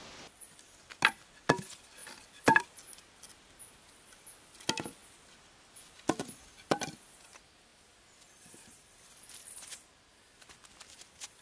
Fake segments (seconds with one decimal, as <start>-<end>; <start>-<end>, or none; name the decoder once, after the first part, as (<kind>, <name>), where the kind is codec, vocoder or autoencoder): none